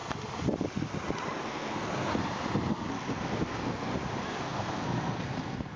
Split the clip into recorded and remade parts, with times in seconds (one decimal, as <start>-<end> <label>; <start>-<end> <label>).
0.0-1.4 recorded; 1.4-2.1 remade; 2.1-2.7 recorded; 2.7-3.9 remade; 3.9-4.4 recorded; 4.4-5.8 remade